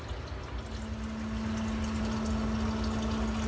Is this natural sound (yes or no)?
yes